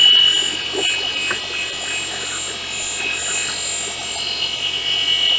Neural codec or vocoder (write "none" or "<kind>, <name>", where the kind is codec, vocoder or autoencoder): none